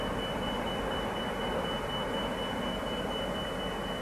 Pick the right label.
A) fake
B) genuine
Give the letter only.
B